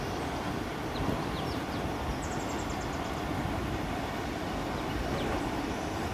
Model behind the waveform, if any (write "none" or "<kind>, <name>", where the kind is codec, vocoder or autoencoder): none